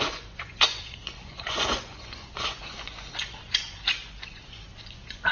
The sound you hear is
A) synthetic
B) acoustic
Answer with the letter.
A